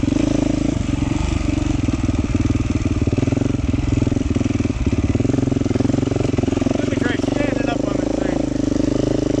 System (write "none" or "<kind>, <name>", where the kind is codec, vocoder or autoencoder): vocoder, BigVGAN v2